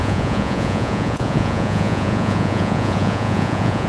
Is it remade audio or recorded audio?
remade